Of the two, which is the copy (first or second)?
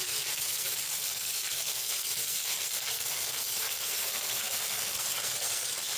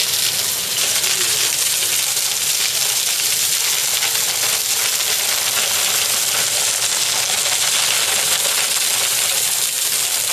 first